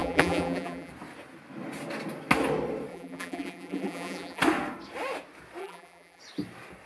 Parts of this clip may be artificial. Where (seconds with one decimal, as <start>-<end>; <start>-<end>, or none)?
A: 0.0-0.9; 2.9-4.4; 5.6-6.2